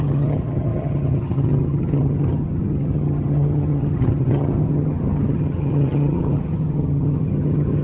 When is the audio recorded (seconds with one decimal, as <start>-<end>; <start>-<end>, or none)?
none